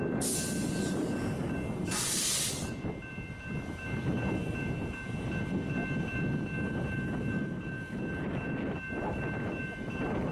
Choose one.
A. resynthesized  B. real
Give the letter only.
B